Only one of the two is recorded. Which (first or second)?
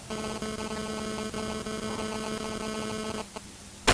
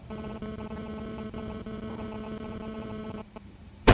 first